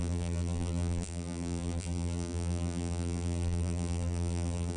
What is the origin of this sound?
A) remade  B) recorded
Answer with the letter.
A